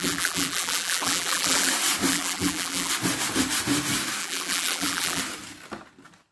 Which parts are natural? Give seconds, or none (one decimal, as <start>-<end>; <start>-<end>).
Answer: 1.7-2.1; 2.9-4.2; 5.2-6.3